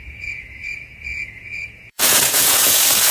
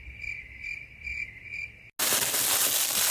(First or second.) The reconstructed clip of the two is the first